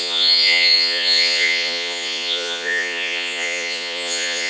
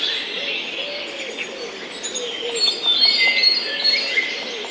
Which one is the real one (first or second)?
second